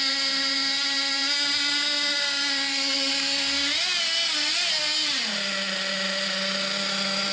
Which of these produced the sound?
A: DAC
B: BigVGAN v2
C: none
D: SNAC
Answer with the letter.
C